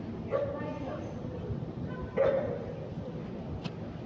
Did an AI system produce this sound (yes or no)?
no